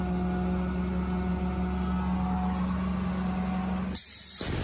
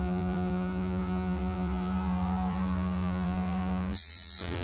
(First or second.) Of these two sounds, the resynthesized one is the second